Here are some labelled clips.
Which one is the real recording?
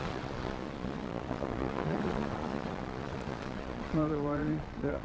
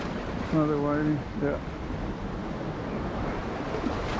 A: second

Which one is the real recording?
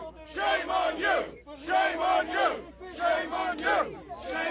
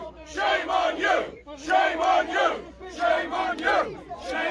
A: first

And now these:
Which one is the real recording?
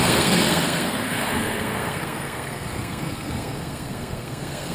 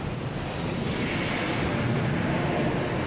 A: second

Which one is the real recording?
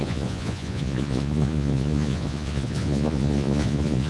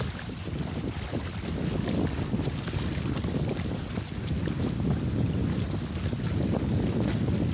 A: second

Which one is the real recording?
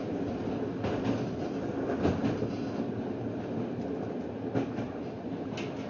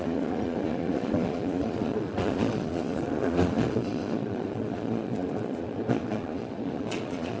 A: first